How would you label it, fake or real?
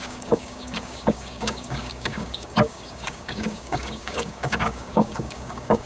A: fake